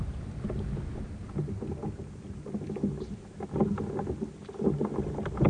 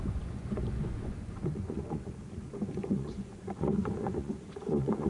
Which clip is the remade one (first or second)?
second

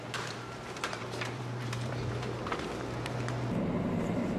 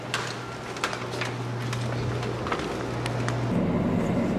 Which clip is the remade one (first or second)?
first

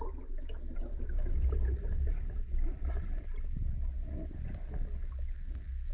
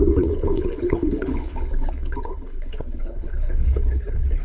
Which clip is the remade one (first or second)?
second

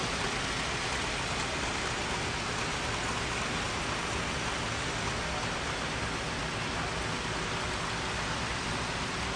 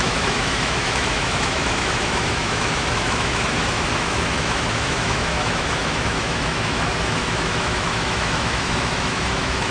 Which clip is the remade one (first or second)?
second